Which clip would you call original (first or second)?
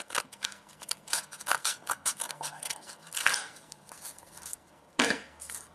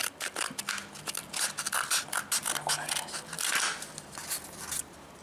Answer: second